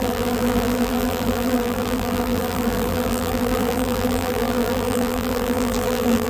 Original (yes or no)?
no